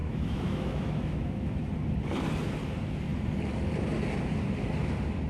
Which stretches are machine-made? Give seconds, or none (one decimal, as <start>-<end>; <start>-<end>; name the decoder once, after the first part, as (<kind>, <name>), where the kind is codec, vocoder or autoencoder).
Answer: 0.0-1.6 (autoencoder, DAC-VAE)